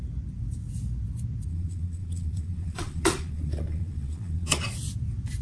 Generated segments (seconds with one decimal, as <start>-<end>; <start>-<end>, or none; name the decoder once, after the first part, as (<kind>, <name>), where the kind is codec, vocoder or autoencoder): 1.5-4.7 (vocoder, Vocos)